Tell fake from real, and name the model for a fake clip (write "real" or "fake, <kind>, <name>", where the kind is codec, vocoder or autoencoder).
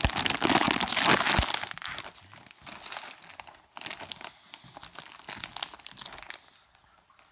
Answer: real